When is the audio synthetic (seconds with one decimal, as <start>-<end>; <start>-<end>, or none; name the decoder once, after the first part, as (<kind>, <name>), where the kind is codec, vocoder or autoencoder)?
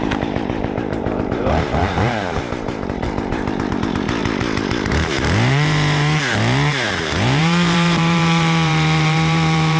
0.0-9.8 (vocoder, BigVGAN v2)